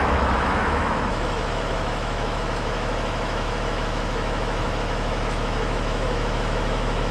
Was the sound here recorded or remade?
remade